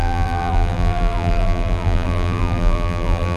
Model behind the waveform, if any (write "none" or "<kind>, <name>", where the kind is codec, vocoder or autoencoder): vocoder, BigVGAN v2